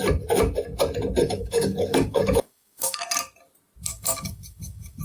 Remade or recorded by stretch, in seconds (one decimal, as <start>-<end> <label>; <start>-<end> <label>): 0.0-1.2 recorded; 1.2-3.1 remade; 3.1-3.9 recorded; 3.9-5.0 remade